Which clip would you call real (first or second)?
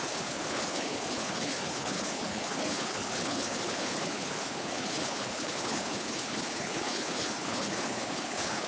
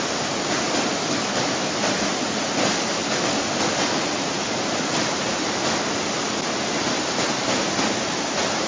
second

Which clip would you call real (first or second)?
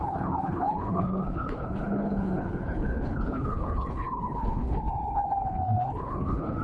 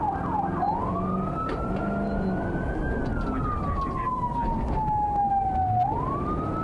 second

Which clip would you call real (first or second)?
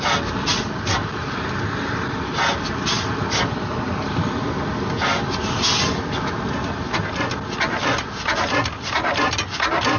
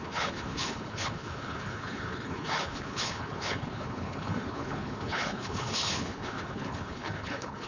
first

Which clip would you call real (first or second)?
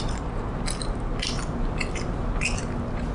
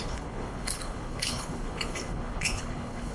first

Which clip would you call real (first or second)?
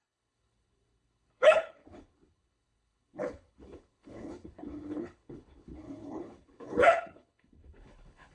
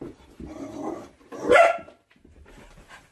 second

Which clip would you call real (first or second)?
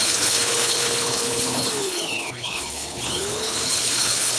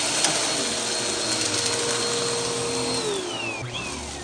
second